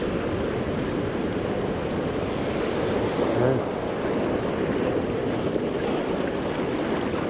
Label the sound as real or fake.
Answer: real